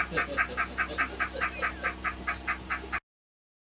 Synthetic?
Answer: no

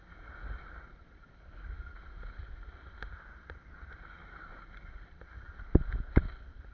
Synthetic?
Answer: no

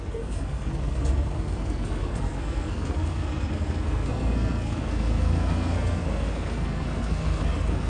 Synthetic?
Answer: yes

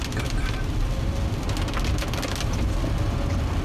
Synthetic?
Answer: no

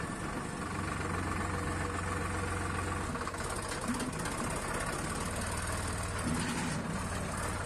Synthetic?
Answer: no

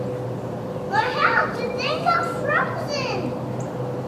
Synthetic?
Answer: no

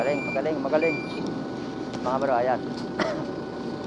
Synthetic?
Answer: no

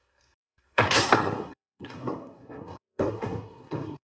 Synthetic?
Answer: yes